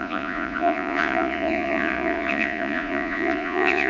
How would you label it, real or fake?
fake